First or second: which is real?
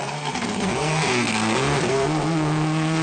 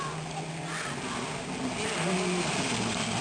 second